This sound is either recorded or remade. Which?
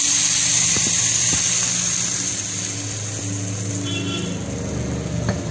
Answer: recorded